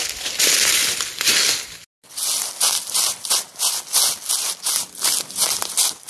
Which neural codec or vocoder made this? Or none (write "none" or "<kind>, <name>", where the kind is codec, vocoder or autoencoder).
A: none